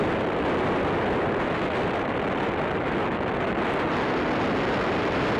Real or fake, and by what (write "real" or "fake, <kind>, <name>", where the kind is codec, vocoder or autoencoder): real